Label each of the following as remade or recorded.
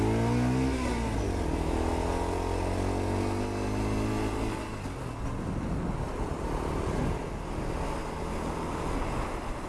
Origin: recorded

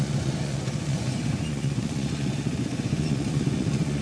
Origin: remade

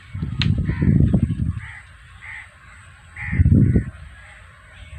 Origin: recorded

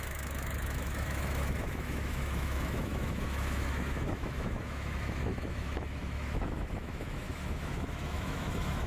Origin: remade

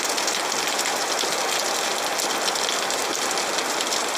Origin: recorded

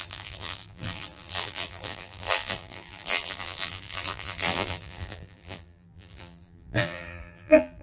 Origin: remade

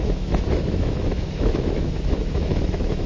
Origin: remade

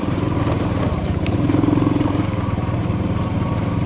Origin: remade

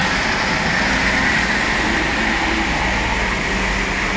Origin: recorded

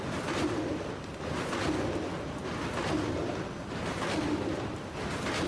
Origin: recorded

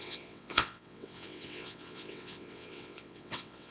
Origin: remade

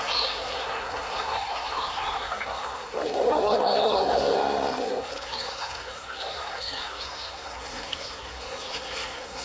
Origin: remade